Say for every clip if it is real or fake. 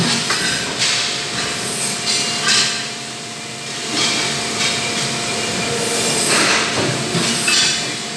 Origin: real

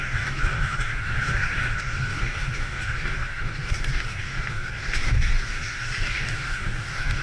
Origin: fake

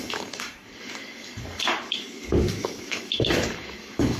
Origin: fake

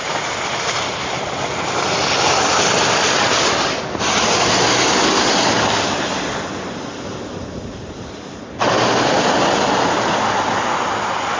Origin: real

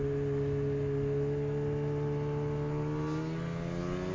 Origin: real